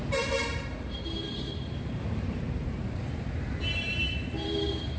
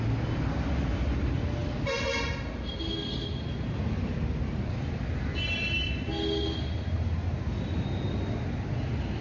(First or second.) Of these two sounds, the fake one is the first